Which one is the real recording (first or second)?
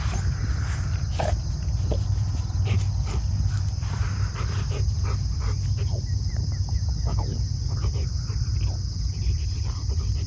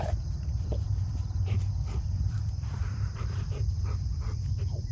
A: first